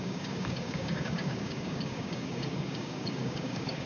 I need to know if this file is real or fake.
fake